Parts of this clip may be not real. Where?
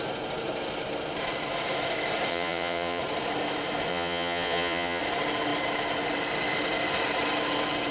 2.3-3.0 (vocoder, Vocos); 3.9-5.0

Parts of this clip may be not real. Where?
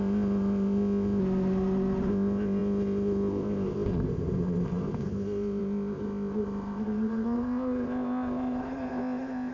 0.0-1.2 (codec, ZipCodec); 2.1-9.5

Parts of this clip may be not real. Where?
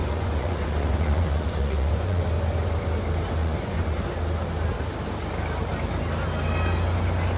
0.0-2.2 (vocoder, Vocos); 3.4-4.0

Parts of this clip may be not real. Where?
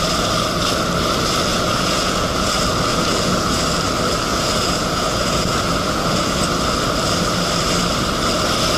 1.5-2.5 (vocoder, Vocos); 2.9-3.6; 4.3-6.4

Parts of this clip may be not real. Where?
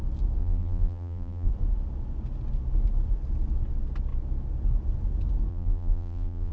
0.4-1.5 (vocoder, BigVGAN v2); 5.5-6.5